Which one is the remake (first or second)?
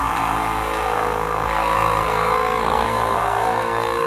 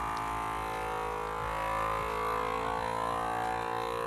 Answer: first